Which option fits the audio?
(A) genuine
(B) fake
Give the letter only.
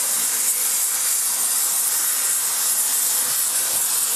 A